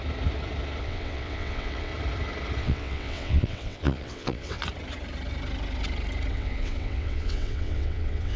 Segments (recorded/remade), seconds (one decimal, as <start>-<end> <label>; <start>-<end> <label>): 0.0-0.8 recorded; 0.8-1.9 remade; 1.9-2.6 recorded; 2.6-4.6 remade; 4.6-6.3 recorded; 6.3-8.4 remade